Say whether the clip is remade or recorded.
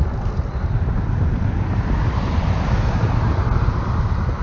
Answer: recorded